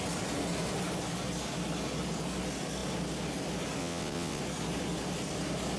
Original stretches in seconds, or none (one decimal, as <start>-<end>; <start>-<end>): 0.0-3.8; 4.4-5.8